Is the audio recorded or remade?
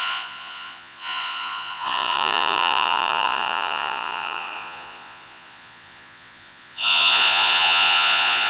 remade